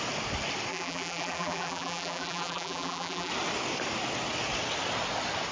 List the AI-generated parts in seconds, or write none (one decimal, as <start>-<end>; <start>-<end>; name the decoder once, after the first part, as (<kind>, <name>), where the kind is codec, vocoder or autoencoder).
0.7-3.3 (vocoder, BigVGAN v2)